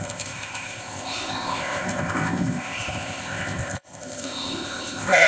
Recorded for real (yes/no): no